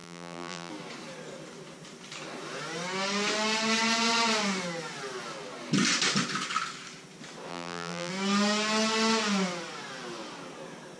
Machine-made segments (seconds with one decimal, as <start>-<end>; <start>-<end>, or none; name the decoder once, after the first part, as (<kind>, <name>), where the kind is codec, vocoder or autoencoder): 0.0-0.7 (vocoder, BigVGAN v2); 7.5-8.1